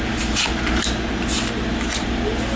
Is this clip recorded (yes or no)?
yes